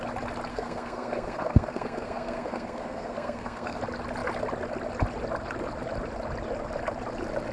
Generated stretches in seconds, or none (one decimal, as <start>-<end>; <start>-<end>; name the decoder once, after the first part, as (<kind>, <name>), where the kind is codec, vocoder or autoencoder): 0.5-3.8 (codec, SNAC)